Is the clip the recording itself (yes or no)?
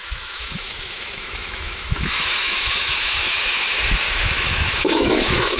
no